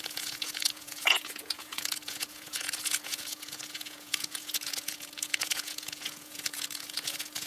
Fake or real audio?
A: fake